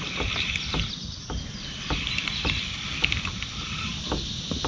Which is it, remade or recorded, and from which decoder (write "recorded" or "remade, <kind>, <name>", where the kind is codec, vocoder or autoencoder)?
recorded